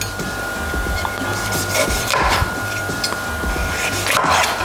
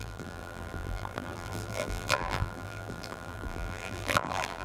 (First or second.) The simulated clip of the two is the second